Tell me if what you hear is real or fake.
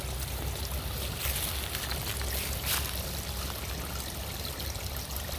real